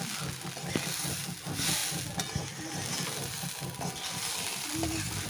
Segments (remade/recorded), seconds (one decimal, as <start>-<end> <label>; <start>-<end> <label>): 0.0-5.3 recorded